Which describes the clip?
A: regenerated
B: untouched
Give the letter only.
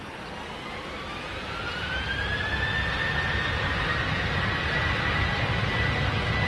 B